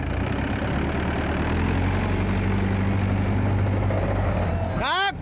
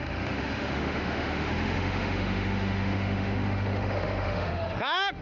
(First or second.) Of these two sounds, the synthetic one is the second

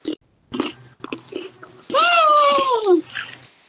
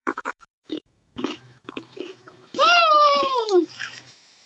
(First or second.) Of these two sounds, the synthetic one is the second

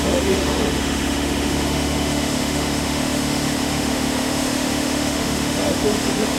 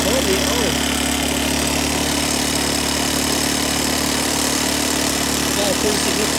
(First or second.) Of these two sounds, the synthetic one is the first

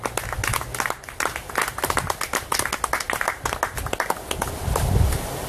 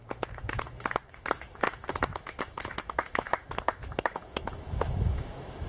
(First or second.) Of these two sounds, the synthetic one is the second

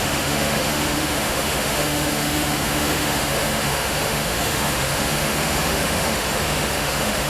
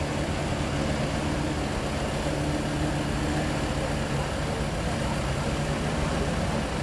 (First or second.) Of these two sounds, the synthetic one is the first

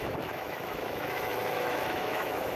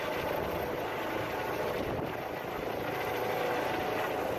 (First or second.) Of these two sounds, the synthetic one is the first